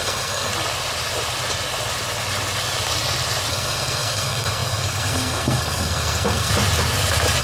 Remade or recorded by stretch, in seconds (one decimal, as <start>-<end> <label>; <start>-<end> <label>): 0.0-0.5 remade; 0.5-3.5 recorded; 3.5-6.5 remade; 6.5-7.4 recorded